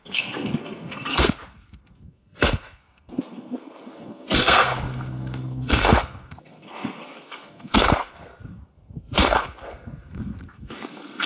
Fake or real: fake